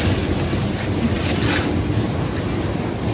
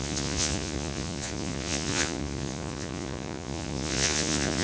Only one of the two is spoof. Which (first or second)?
second